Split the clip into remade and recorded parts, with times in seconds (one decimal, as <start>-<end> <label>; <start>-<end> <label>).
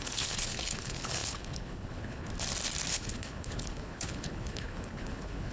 0.0-2.3 remade; 2.3-2.9 recorded; 2.9-5.5 remade